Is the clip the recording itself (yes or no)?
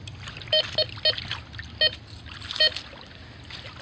yes